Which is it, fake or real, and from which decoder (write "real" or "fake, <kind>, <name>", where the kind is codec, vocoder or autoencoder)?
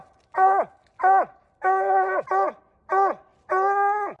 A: real